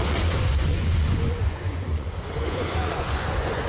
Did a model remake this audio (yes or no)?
yes